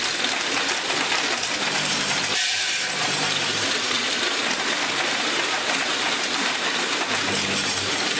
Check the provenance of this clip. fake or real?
fake